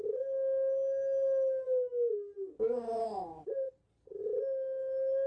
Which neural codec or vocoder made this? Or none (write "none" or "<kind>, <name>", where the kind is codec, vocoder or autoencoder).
none